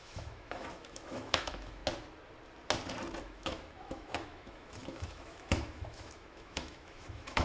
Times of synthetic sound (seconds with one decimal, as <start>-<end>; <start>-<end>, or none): 0.0-1.8; 3.2-7.4